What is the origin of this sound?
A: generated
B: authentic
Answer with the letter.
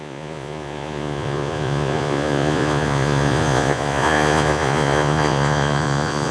A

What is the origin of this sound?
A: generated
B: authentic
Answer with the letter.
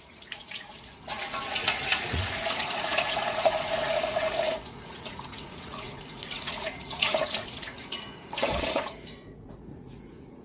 A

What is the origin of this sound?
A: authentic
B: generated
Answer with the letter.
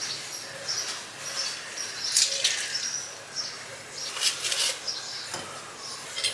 A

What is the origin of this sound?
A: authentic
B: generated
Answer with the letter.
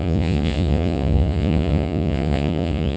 B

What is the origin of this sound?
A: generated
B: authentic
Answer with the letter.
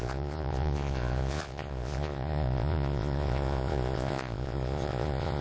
A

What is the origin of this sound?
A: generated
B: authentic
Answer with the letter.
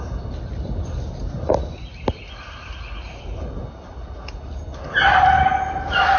B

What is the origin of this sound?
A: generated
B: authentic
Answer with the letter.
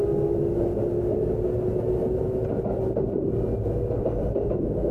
B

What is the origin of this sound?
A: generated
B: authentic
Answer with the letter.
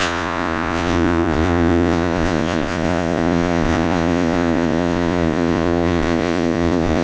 A